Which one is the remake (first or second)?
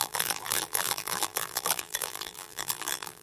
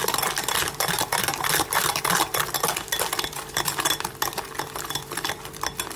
first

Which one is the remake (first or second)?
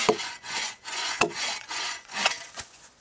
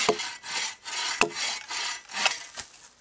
first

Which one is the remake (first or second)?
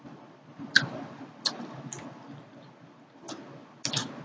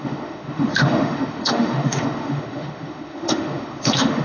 second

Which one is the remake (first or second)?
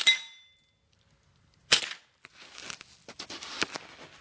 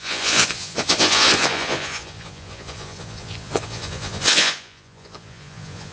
second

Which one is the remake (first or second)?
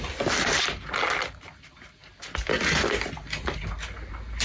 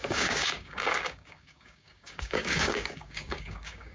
second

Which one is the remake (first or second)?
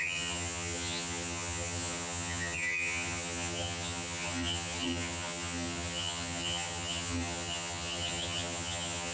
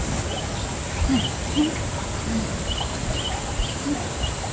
first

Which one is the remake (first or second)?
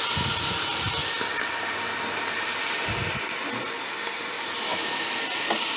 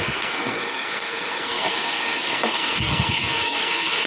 second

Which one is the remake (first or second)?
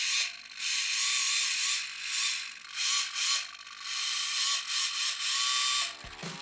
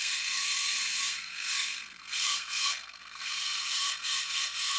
second